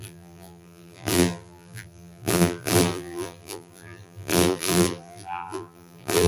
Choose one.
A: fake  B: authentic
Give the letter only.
A